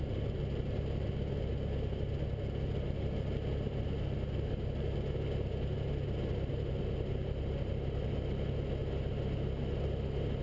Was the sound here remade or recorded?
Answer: recorded